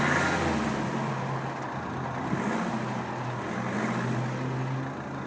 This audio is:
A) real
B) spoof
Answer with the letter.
A